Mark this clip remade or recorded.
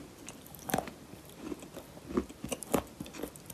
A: recorded